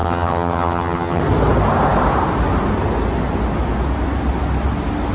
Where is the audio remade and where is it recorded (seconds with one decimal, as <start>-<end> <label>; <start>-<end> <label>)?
0.0-1.2 remade; 1.2-5.1 recorded